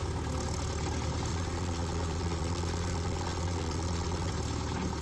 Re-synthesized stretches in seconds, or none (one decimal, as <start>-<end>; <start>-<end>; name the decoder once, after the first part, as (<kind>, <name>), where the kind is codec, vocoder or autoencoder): 1.3-4.3 (vocoder, Vocos)